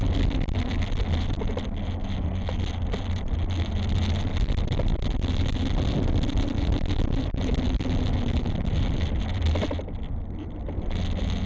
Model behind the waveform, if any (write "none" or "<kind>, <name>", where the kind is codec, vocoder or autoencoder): none